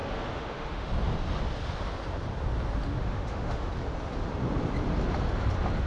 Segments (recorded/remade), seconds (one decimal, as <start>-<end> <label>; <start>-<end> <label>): 0.0-0.9 remade; 0.9-3.0 recorded; 3.0-3.7 remade; 3.7-5.9 recorded